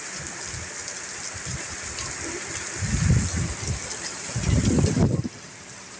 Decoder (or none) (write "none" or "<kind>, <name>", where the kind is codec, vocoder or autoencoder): none